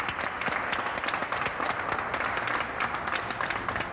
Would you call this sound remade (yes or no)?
no